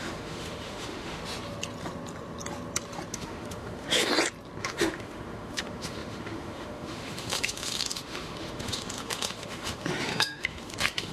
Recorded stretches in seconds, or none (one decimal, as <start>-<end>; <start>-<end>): 1.2-3.1; 4.1-4.6